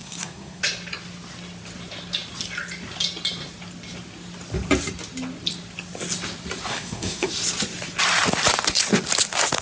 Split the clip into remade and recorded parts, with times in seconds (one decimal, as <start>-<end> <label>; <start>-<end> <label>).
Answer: 0.0-0.6 remade; 0.6-6.7 recorded; 6.7-7.3 remade; 7.3-9.6 recorded